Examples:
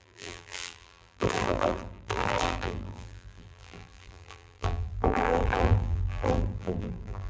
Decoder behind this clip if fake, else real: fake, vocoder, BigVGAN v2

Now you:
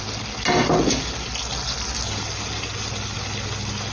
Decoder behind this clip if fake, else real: real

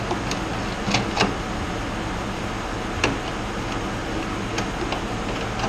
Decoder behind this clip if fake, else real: real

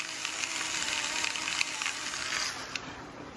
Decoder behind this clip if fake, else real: real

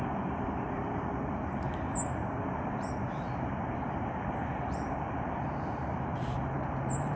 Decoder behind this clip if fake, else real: fake, vocoder, BigVGAN v2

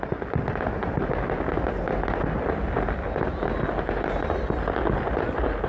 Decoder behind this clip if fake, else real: real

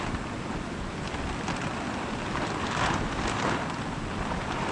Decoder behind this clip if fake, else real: real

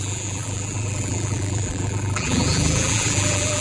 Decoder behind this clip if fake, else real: fake, vocoder, BigVGAN v2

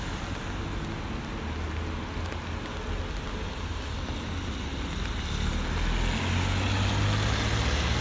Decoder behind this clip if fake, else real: real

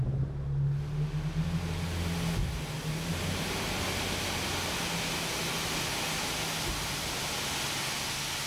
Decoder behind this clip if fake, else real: real